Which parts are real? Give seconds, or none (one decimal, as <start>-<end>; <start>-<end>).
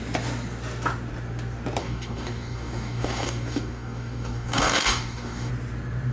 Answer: 0.0-1.8; 5.5-6.1